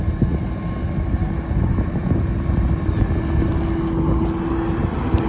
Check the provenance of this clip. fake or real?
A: real